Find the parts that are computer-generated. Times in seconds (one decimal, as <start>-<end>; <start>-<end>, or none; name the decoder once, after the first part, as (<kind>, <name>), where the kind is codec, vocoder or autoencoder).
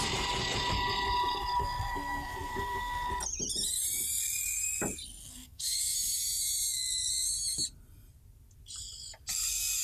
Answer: 1.6-3.1 (codec, SNAC); 5.2-5.8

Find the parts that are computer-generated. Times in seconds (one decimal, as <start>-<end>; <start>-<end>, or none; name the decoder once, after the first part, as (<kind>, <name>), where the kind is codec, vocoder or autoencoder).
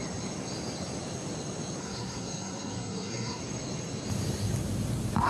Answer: 1.8-3.4 (codec, SNAC)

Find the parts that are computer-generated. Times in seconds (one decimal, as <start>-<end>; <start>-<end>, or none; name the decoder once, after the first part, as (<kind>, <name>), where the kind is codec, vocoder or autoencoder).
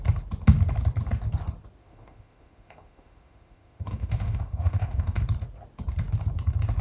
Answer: 1.8-5.2 (autoencoder, DAC-VAE)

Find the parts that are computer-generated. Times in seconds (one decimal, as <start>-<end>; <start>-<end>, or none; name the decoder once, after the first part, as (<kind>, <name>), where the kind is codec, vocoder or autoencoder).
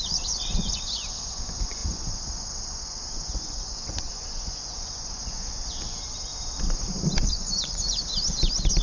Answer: 0.0-6.3 (vocoder, Vocos); 7.3-8.0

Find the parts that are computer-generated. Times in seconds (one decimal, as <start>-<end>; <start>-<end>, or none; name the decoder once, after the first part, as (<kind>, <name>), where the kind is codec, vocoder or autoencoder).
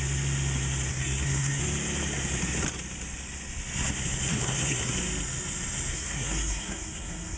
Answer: 0.9-1.6 (codec, SNAC); 4.3-4.9; 5.9-7.4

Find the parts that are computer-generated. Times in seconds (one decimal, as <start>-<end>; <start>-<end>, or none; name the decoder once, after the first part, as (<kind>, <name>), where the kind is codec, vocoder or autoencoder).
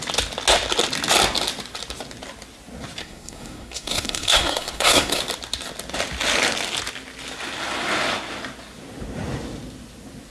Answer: 3.0-5.2 (codec, SNAC)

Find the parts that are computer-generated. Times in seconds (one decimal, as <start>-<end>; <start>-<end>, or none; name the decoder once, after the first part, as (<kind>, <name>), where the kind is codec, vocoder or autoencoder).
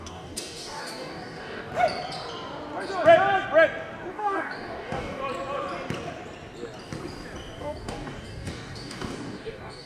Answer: 0.0-1.7 (codec, DAC); 4.1-5.2; 7.6-9.9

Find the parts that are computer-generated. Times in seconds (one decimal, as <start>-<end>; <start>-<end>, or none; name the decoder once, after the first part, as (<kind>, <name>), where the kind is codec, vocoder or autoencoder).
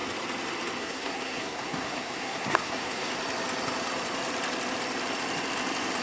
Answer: 0.8-3.1 (codec, SNAC)